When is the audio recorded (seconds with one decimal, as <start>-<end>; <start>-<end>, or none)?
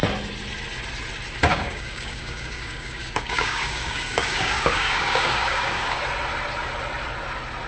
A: 0.0-1.5; 6.0-7.7